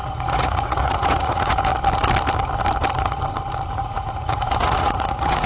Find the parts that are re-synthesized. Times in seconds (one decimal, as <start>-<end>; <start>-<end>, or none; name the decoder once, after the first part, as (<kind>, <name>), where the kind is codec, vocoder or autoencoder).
0.0-1.7 (vocoder, Vocos); 3.7-5.5